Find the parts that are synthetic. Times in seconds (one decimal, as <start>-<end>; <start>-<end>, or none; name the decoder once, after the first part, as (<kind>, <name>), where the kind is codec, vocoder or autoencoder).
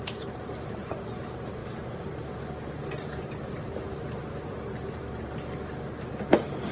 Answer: none